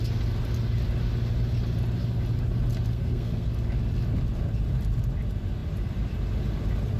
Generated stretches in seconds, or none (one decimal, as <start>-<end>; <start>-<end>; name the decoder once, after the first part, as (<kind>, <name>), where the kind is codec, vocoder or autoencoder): 2.9-3.5 (codec, SNAC)